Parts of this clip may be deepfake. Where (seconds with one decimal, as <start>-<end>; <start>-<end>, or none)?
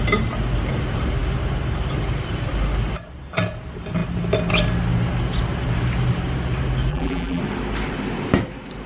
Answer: 6.9-7.4